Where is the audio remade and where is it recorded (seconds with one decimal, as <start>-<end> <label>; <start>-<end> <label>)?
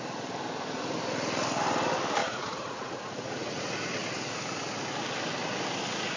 0.0-2.2 recorded; 2.2-3.6 remade; 3.6-6.2 recorded